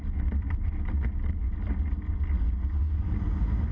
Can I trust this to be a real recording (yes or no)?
yes